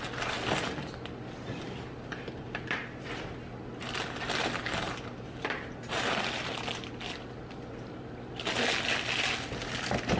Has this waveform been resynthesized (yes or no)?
no